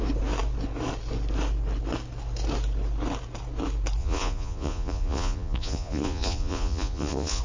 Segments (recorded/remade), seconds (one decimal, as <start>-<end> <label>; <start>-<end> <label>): 0.0-4.0 recorded; 4.0-7.4 remade